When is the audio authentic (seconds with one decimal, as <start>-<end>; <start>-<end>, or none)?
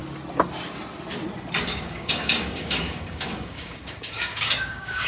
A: 0.0-1.6